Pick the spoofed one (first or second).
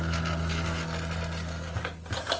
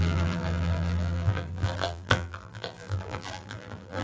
second